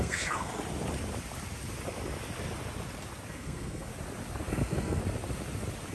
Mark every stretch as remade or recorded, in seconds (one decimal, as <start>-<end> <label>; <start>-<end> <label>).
0.0-0.5 remade; 0.5-3.3 recorded; 3.3-3.9 remade; 3.9-4.5 recorded; 4.5-5.0 remade; 5.0-5.9 recorded